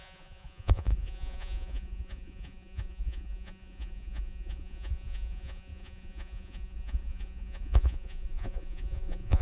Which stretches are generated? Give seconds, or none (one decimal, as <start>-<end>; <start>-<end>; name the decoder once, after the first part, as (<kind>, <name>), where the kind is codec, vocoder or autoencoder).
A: 0.0-9.4 (vocoder, Vocos)